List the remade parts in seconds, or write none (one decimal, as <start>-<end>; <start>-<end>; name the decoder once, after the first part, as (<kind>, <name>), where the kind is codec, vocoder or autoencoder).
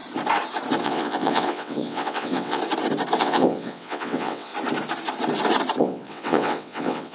0.8-2.6 (vocoder, WaveNeXt); 3.2-4.5; 5.8-7.1